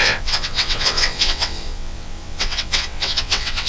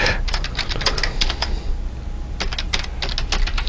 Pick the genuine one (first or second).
second